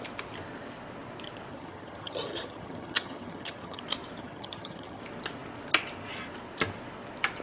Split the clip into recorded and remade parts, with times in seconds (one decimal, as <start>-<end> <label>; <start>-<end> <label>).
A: 0.0-1.5 recorded; 1.5-3.8 remade; 3.8-4.2 recorded; 4.2-5.0 remade; 5.0-7.4 recorded